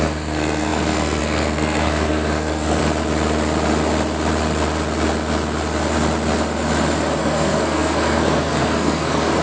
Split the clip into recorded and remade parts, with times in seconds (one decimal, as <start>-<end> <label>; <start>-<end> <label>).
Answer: 0.0-2.8 remade; 2.8-7.2 recorded; 7.2-9.4 remade